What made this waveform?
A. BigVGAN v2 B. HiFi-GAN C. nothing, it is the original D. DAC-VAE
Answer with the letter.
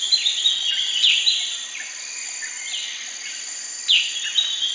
C